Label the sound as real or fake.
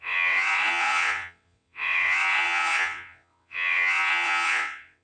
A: fake